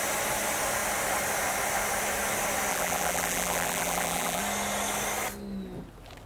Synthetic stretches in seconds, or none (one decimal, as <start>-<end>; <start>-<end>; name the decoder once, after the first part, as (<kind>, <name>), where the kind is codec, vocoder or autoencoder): 2.7-4.4 (vocoder, BigVGAN v2)